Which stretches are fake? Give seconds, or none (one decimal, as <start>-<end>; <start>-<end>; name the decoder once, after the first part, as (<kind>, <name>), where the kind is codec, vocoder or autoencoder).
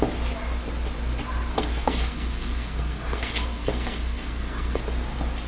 1.5-4.8 (codec, SNAC)